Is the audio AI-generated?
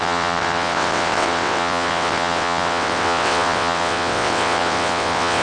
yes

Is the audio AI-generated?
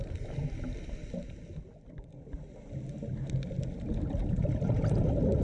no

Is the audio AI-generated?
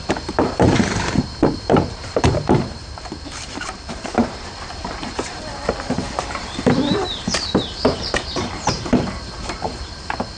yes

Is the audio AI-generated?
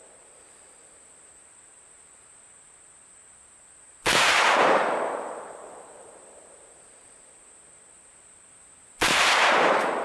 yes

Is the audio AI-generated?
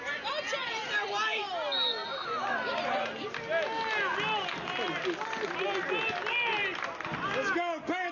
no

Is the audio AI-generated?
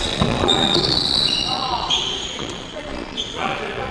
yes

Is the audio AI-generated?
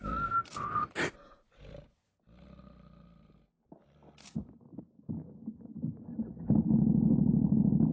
no